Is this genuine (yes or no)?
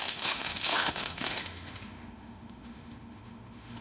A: no